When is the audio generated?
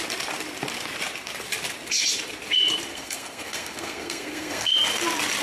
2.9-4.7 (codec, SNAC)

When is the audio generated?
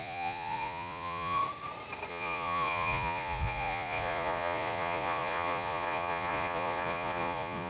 0.0-1.4 (vocoder, Vocos); 2.1-7.7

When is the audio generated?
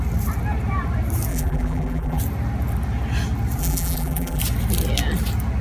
1.3-2.2 (vocoder, BigVGAN v2); 3.6-4.4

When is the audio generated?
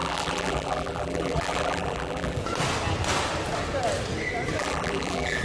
0.0-2.4 (vocoder, BigVGAN v2); 4.6-5.4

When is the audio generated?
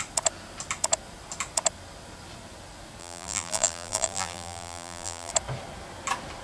3.0-5.3 (vocoder, BigVGAN v2)